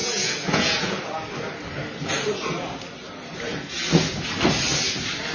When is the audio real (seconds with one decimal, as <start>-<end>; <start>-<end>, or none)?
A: 1.0-5.3